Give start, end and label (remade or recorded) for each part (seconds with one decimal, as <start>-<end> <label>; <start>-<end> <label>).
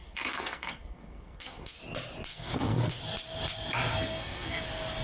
0.0-1.8 remade; 1.8-2.3 recorded; 2.3-3.0 remade; 3.0-3.9 recorded; 3.9-4.6 remade; 4.6-5.0 recorded